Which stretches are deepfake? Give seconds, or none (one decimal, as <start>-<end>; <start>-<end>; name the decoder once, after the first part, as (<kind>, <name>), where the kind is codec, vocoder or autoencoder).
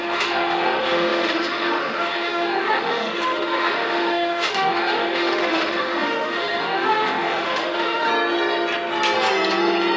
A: 0.0-8.1 (autoencoder, DAC-VAE)